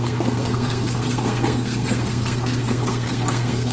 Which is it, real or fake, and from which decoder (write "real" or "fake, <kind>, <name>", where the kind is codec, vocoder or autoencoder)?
fake, codec, SNAC